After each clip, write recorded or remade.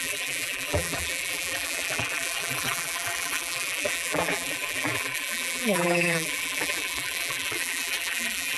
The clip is remade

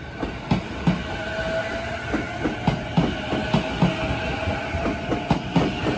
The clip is recorded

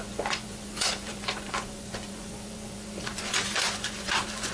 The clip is remade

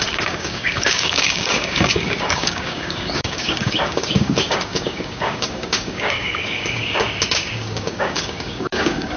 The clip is remade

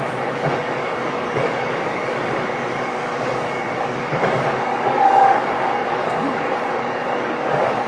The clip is remade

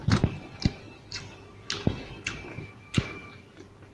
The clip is remade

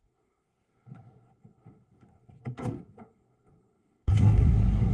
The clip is remade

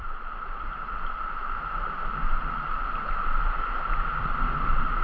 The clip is recorded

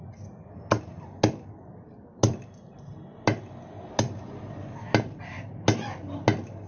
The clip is recorded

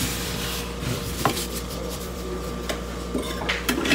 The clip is remade